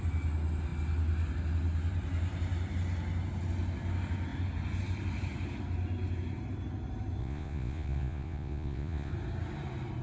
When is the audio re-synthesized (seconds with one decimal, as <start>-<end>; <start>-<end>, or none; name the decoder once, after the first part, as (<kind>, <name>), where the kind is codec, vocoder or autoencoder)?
7.2-9.1 (vocoder, Vocos)